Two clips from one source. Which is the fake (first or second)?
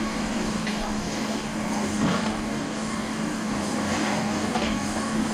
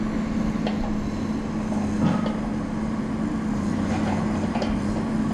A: first